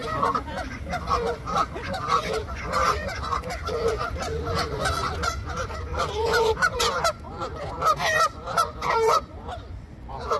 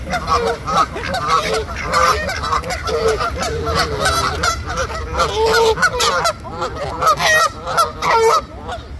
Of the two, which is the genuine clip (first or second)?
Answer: second